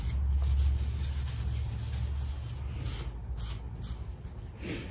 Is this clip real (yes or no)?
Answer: yes